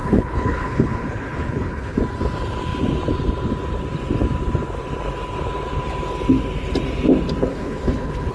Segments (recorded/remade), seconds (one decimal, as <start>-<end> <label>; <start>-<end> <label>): 0.0-2.0 remade; 2.0-7.5 recorded; 7.5-8.3 remade